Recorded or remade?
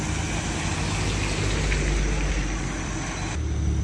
recorded